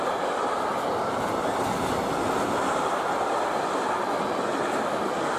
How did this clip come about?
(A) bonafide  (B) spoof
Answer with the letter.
A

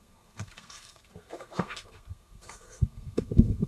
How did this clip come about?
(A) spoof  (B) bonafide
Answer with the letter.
A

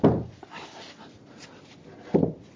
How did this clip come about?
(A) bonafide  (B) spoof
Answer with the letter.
A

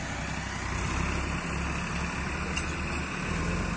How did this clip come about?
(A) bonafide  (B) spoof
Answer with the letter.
A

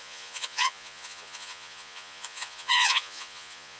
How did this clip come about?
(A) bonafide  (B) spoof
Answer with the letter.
B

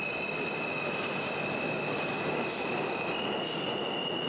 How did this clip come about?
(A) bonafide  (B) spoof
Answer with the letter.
A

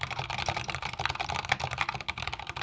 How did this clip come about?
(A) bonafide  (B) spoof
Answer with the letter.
A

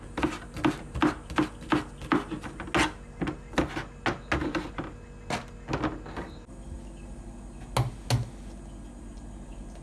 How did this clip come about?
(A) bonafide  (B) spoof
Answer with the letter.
A